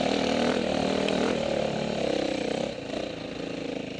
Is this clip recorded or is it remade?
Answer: recorded